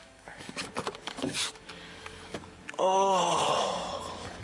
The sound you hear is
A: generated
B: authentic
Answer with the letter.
A